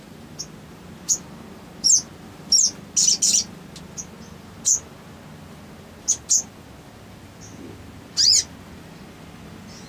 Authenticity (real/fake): real